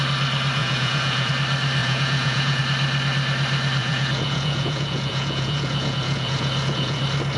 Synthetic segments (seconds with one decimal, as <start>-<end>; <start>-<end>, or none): 0.6-1.3; 1.8-2.6; 3.8-7.0